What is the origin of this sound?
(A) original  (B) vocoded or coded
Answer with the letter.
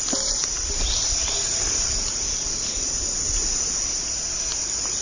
A